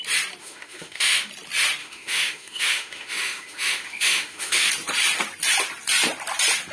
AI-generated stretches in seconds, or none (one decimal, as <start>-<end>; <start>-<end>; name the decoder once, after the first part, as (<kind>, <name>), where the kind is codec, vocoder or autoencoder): 0.4-1.3 (autoencoder, DAC-VAE); 1.8-4.7